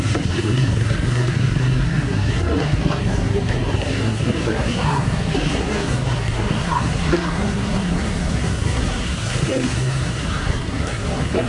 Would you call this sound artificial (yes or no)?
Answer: yes